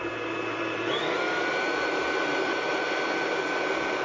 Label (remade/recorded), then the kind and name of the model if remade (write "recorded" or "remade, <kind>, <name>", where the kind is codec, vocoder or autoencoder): recorded